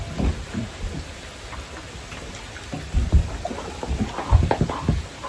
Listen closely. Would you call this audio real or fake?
real